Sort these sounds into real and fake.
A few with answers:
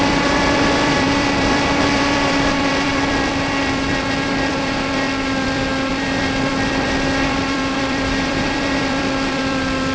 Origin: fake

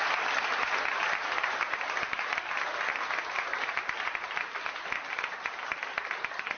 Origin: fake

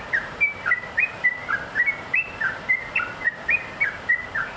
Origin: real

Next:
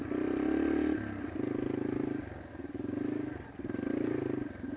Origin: real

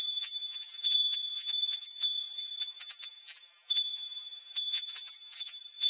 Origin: fake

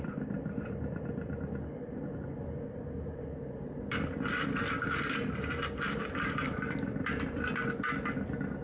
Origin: fake